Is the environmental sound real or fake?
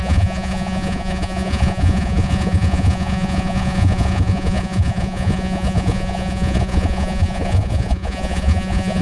fake